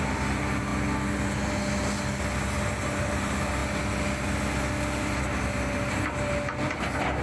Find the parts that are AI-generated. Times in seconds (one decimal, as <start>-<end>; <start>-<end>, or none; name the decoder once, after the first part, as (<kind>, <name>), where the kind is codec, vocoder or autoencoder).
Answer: none